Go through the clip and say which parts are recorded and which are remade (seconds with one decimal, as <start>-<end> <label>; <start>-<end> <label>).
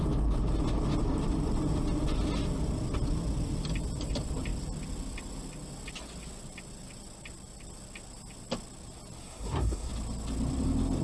0.0-9.2 recorded; 9.2-9.9 remade; 9.9-11.0 recorded